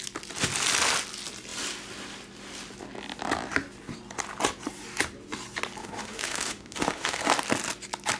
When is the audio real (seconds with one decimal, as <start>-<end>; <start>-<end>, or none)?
0.0-5.8; 7.2-8.2